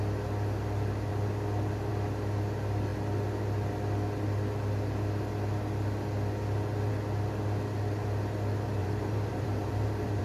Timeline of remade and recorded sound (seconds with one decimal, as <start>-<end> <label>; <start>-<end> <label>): 0.0-8.8 recorded; 8.8-10.2 remade